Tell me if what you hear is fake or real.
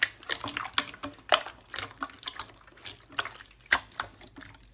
real